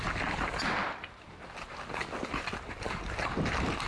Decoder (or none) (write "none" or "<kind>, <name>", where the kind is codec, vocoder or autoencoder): none